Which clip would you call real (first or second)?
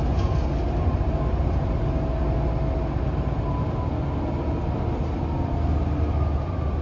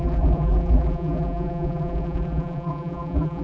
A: first